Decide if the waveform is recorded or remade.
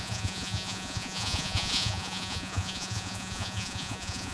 remade